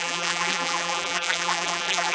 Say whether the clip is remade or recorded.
remade